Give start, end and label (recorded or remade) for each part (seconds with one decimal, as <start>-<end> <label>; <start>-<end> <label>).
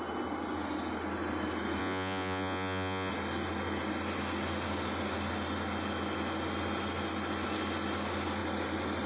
0.0-1.8 recorded; 1.8-3.1 remade; 3.1-9.1 recorded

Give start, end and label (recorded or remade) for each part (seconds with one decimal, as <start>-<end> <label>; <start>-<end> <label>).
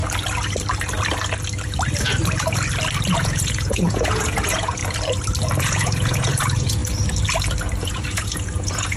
0.0-3.1 recorded; 3.1-4.8 remade; 4.8-5.6 recorded; 5.6-6.8 remade; 6.8-7.8 recorded; 7.8-9.0 remade